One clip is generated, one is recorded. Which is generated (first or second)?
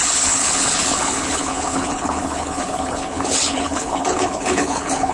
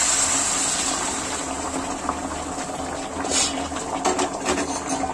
first